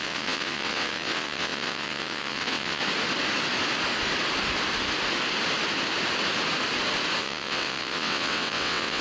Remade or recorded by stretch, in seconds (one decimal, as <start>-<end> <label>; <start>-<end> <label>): 0.0-2.8 remade; 2.8-7.2 recorded; 7.2-9.0 remade